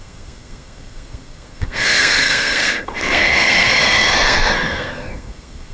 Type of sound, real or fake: fake